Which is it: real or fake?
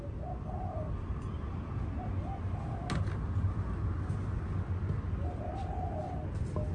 real